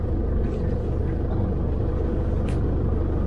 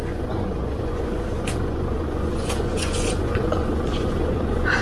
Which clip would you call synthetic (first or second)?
second